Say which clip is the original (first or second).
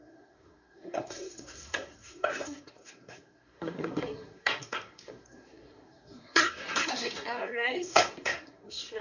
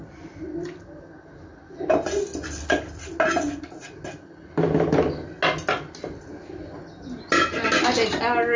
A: second